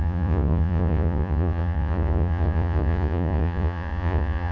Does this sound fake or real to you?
fake